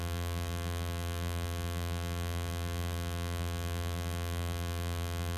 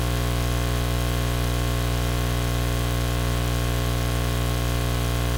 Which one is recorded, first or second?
second